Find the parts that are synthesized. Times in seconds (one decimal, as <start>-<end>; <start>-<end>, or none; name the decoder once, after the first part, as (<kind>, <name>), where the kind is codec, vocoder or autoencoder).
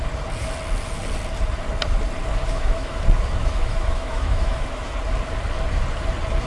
2.3-3.0 (autoencoder, DAC-VAE); 3.4-4.9